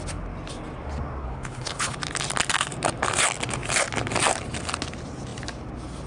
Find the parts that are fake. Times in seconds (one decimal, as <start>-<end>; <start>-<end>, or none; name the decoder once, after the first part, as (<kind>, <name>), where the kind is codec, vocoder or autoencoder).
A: 1.2-2.0 (codec, HILCodec)

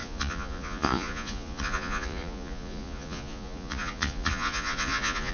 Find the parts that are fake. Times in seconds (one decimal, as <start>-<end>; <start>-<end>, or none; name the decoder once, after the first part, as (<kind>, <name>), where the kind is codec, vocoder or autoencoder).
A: 0.0-5.3 (vocoder, Vocos)